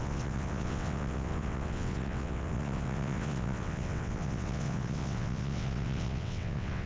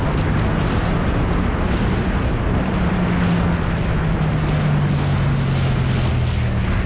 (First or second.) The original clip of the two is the second